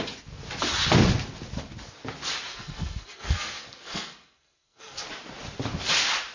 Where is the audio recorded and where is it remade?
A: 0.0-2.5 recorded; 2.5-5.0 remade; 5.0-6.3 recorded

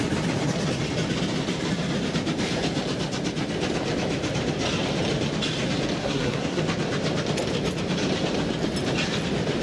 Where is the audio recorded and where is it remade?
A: 0.0-6.0 recorded; 6.0-6.6 remade; 6.6-9.6 recorded

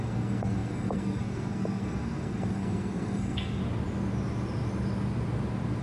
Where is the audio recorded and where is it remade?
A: 0.0-3.6 remade; 3.6-5.8 recorded

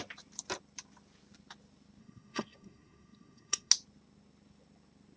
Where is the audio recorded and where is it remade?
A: 0.0-2.0 recorded; 2.0-3.7 remade; 3.7-5.2 recorded